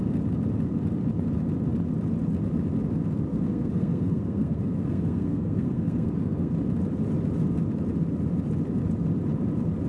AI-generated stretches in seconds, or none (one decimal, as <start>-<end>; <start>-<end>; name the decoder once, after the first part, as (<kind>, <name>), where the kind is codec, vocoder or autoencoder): 3.3-6.5 (codec, SNAC)